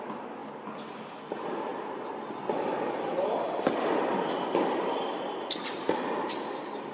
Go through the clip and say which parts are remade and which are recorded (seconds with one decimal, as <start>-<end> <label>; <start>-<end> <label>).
0.0-6.9 recorded